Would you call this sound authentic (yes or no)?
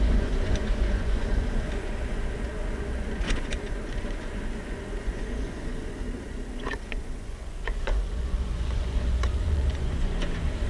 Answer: no